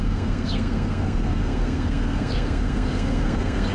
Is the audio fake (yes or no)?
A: yes